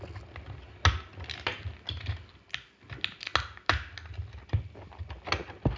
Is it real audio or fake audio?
real